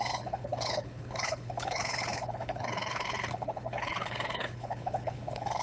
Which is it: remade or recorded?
remade